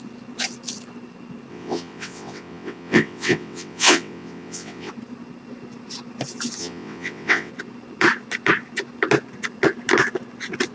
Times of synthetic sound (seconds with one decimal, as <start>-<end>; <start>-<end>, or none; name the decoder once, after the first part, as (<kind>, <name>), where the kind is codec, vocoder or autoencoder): 1.5-4.9 (vocoder, WaveNeXt); 6.6-7.5